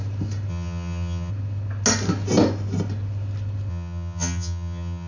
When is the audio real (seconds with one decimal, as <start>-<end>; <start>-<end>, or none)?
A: 0.0-0.5; 1.3-3.7